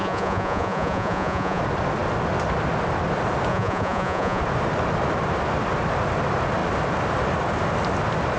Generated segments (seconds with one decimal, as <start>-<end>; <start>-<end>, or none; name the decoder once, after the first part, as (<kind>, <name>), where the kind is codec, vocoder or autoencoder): 0.0-1.6 (vocoder, Vocos); 3.5-4.4